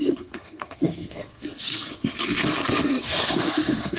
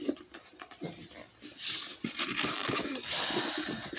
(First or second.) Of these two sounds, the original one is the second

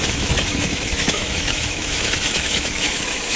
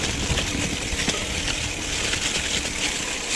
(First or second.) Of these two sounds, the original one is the second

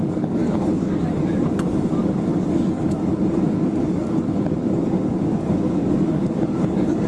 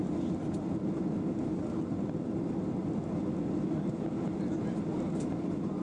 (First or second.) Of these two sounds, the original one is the second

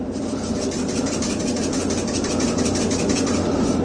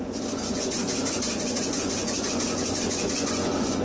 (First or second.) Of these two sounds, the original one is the first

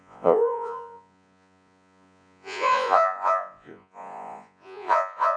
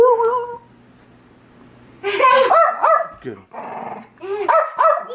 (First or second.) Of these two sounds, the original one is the second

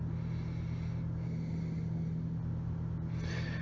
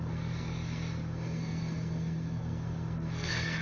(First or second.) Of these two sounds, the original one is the first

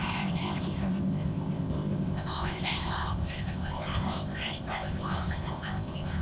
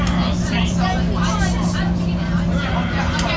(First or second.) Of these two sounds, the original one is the second